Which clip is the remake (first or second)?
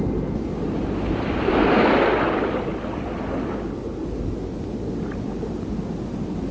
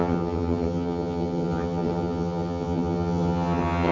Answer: second